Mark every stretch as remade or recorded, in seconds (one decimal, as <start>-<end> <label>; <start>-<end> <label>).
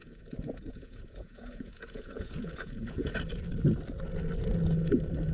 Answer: 0.0-3.2 remade; 3.2-5.3 recorded